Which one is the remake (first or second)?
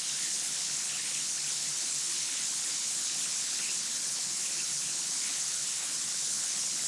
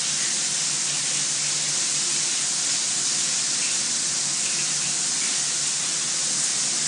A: first